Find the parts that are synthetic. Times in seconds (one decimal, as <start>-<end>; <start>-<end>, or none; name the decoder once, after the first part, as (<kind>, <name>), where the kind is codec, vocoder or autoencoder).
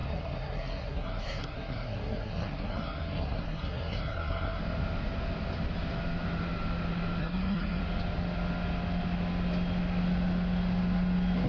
0.0-4.6 (codec, SNAC); 7.2-7.8